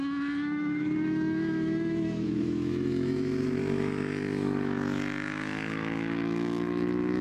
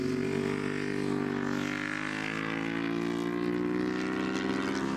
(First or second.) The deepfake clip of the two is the first